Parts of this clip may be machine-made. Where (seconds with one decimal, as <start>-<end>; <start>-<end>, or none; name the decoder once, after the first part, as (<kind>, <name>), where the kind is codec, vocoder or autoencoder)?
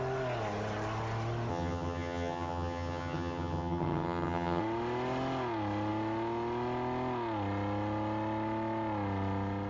1.5-4.6 (vocoder, HiFi-GAN)